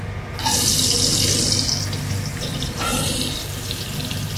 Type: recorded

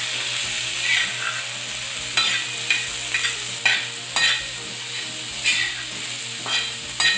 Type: recorded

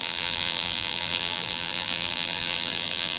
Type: remade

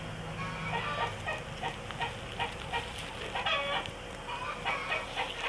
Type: recorded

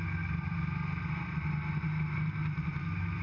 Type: recorded